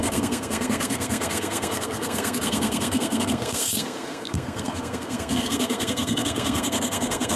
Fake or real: fake